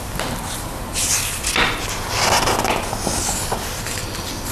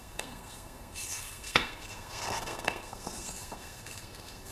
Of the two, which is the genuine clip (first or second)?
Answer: first